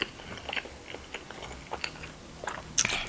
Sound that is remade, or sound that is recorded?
recorded